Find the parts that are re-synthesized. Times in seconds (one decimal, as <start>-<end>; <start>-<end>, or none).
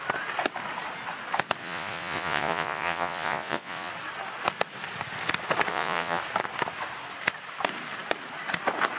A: 1.6-3.9; 5.7-6.2